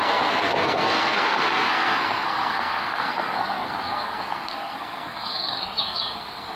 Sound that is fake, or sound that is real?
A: fake